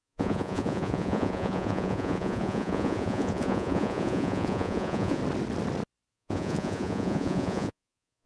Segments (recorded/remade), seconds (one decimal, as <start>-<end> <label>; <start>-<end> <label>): 0.0-5.2 remade; 5.2-6.1 recorded; 6.1-8.3 remade